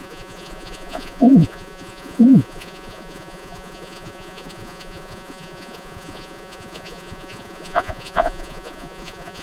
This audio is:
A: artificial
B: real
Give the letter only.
A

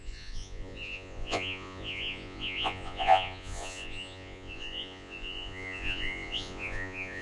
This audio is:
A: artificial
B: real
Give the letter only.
A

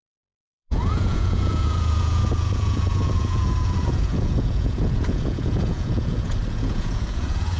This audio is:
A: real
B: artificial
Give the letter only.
B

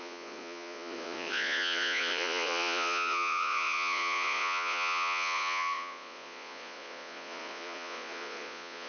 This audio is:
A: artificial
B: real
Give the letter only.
A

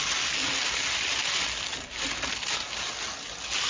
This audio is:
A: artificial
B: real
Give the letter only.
B